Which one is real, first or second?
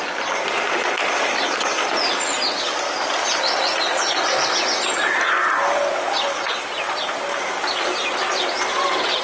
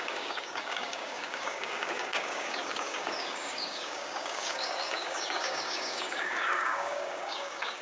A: first